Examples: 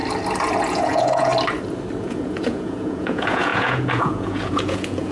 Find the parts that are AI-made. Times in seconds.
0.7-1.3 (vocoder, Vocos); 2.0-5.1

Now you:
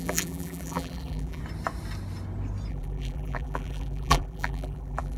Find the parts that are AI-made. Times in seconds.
0.0-1.4 (vocoder, BigVGAN v2); 2.7-5.2

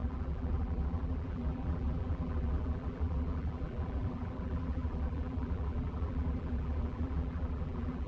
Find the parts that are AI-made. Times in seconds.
0.0-8.1 (vocoder, BigVGAN v2)